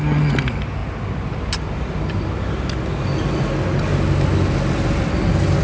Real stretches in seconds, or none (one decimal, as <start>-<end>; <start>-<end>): 0.0-5.6